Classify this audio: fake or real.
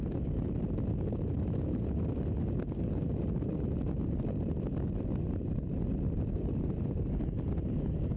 real